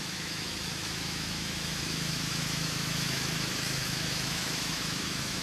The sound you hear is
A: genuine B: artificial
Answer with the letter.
B